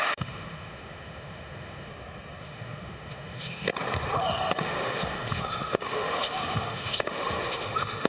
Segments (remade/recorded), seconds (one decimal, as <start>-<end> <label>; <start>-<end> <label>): 0.0-1.9 remade; 1.9-2.4 recorded; 2.4-3.7 remade; 3.7-4.6 recorded; 4.6-8.1 remade

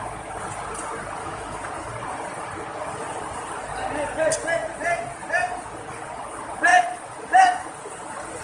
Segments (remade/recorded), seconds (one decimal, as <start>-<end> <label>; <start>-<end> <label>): 0.0-1.2 recorded; 1.2-1.7 remade; 1.7-8.4 recorded

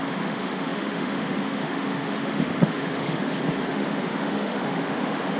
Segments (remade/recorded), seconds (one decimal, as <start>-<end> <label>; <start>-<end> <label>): 0.0-3.2 remade; 3.2-3.7 recorded; 3.7-5.4 remade